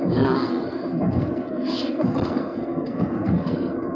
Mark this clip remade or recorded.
remade